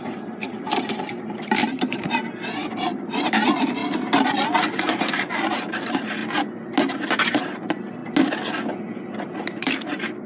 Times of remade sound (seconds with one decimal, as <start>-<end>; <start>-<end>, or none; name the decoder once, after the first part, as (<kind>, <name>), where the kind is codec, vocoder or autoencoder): 0.0-3.8 (vocoder, BigVGAN v2); 4.8-6.2; 7.0-8.0; 9.4-10.3